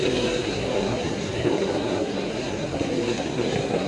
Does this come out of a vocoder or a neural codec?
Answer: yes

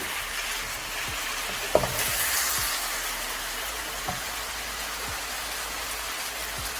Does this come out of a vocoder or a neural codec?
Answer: no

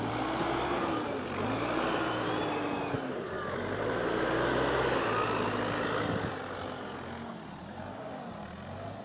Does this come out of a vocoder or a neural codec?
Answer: no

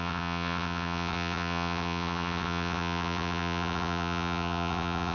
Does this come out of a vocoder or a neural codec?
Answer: yes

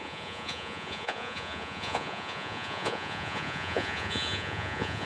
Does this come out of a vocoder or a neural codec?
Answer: yes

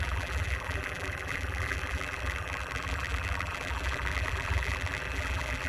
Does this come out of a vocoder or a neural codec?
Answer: yes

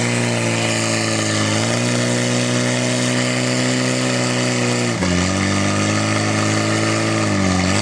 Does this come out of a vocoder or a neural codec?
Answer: no